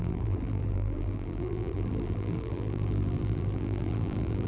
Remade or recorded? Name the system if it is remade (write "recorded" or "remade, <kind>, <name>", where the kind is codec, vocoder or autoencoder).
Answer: remade, vocoder, BigVGAN v2